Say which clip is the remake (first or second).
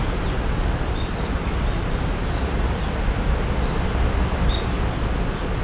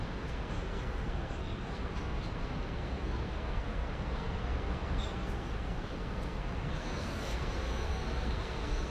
second